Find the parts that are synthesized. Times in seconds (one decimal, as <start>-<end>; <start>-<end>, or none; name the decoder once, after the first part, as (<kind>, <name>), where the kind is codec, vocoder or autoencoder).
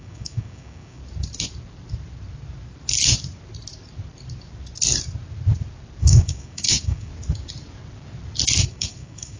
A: 0.0-1.0 (codec, DAC); 6.0-7.1; 8.6-9.4